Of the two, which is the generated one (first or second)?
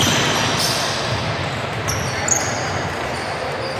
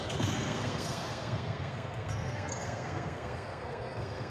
second